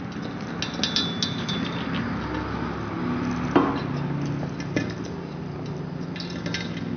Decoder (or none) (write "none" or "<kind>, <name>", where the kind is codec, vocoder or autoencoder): none